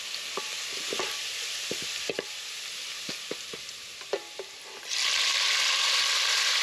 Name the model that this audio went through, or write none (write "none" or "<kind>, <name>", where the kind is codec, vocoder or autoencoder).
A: none